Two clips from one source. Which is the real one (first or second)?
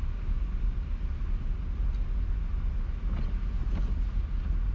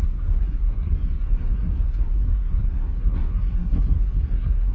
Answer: first